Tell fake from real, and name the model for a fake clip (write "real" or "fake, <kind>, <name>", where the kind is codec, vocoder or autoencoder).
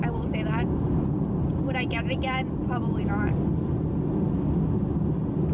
real